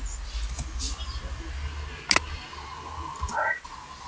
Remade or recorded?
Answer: recorded